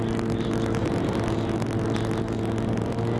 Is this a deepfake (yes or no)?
no